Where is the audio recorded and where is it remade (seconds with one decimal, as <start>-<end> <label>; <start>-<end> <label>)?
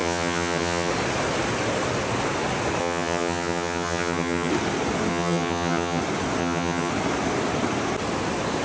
0.0-0.9 remade; 0.9-2.8 recorded; 2.8-4.5 remade; 4.5-5.1 recorded; 5.1-6.0 remade; 6.0-6.4 recorded; 6.4-6.9 remade; 6.9-8.6 recorded